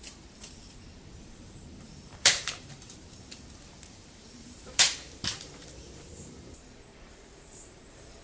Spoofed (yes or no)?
yes